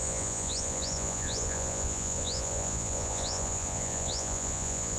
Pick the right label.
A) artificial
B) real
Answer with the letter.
A